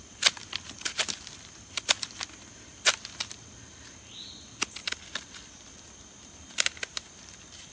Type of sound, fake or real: real